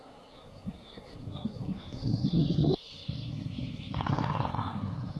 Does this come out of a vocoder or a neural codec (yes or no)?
yes